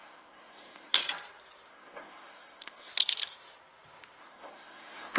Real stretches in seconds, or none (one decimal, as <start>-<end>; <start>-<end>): 1.0-1.7; 2.9-4.2